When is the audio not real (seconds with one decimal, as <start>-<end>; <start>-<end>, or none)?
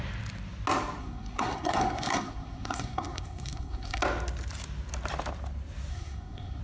1.0-4.0; 5.9-6.6